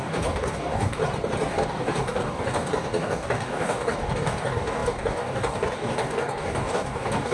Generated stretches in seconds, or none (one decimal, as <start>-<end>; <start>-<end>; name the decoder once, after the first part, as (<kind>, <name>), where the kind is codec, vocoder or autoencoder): 0.0-1.0 (codec, DAC); 1.5-7.3

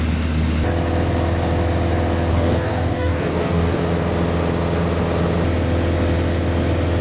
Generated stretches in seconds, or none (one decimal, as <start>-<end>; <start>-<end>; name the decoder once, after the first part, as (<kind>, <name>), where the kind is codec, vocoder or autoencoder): 2.3-3.9 (codec, DAC)

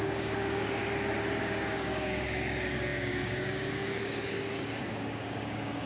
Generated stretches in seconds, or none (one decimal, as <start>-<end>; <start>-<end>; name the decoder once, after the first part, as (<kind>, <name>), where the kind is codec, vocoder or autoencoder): 0.0-0.8 (codec, DAC); 1.4-5.9

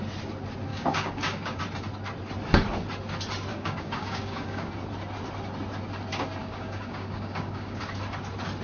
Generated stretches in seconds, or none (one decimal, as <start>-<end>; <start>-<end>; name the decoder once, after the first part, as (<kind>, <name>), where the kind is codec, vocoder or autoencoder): 0.7-1.6 (codec, DAC); 3.5-4.7; 6.4-7.8